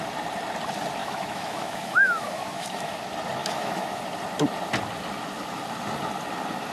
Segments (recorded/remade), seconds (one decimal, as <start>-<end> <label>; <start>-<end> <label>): 0.0-1.0 recorded; 1.0-3.0 remade; 3.0-3.4 recorded; 3.4-4.0 remade; 4.0-6.7 recorded